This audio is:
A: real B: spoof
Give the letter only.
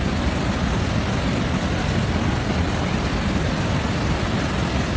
A